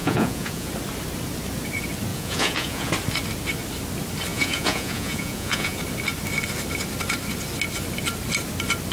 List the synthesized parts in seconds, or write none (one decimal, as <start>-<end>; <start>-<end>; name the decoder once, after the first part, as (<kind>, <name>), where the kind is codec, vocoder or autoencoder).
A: 0.0-0.7 (vocoder, Vocos); 2.1-2.9; 4.3-5.8